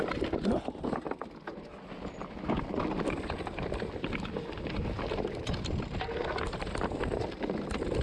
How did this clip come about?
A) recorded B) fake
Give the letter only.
A